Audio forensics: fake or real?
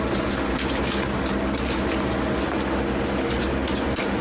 real